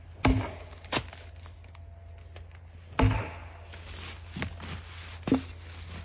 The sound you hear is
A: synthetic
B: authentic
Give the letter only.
B